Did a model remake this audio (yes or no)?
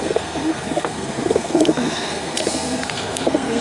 yes